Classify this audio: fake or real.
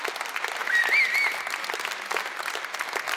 real